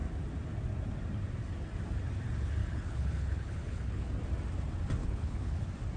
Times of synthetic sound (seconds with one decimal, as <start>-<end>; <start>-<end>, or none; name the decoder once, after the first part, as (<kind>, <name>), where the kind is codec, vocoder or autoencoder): 2.6-4.1 (codec, HILCodec); 5.0-5.6